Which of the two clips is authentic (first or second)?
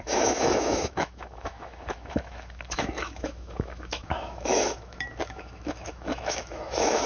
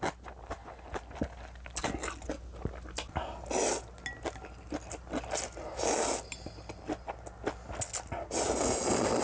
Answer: second